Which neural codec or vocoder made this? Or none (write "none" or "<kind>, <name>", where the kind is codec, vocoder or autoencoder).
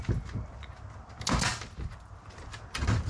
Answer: none